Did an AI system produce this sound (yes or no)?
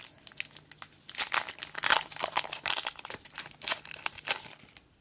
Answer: no